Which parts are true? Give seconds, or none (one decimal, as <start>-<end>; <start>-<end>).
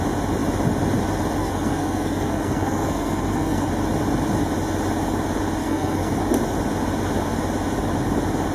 0.0-1.4; 3.7-5.6; 6.2-8.5